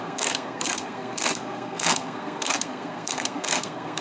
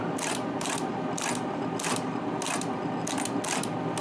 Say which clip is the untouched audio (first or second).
second